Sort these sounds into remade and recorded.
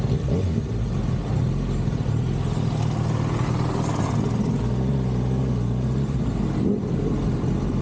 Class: recorded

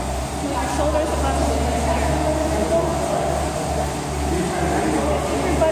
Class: recorded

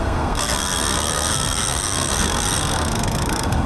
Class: remade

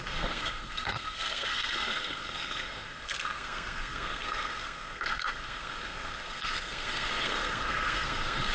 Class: remade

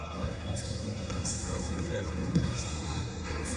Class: remade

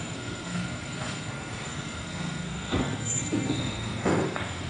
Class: remade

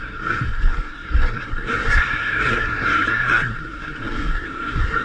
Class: remade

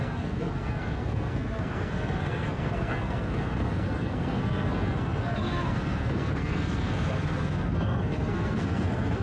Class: remade